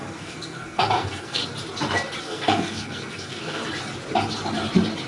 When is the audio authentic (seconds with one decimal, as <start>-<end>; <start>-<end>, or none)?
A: 1.4-2.2; 3.6-5.1

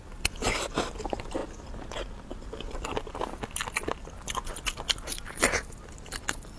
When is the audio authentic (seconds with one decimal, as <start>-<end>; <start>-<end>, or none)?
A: 0.0-6.6

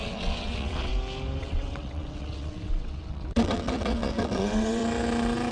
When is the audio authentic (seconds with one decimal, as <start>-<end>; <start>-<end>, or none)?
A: 0.9-1.4; 4.8-5.5

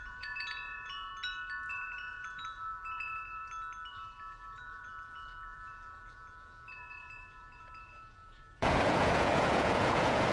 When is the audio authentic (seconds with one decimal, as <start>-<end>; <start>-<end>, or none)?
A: 1.1-1.7; 3.4-3.9